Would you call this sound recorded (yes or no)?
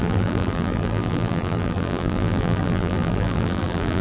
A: no